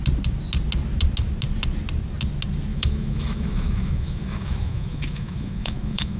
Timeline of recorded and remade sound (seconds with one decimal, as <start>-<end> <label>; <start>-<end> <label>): 0.0-2.7 recorded; 2.7-6.2 remade